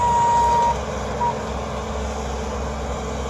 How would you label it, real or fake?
real